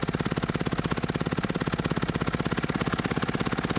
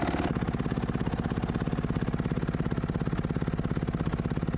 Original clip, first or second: second